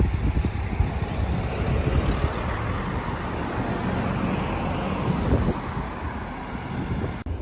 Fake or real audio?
real